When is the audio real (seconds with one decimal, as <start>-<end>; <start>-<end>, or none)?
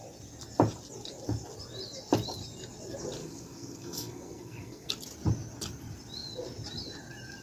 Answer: 0.0-3.2; 4.9-7.4